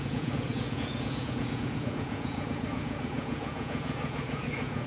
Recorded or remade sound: remade